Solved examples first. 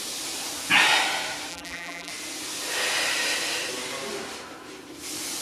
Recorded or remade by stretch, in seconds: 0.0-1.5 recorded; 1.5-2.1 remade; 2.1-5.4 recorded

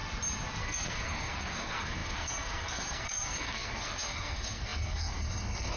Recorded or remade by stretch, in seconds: 0.0-0.6 recorded; 0.6-5.8 remade

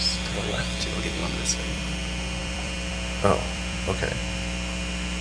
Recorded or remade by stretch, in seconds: 0.0-1.2 remade; 1.2-1.7 recorded; 1.7-5.2 remade